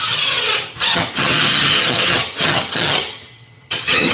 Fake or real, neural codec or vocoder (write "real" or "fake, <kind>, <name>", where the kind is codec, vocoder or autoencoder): fake, vocoder, HiFi-GAN